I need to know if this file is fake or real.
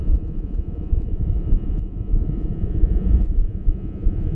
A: fake